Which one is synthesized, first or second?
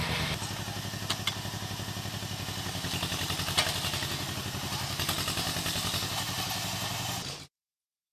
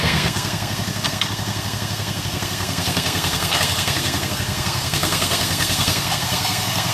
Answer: second